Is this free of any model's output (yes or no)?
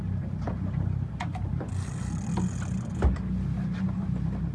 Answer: yes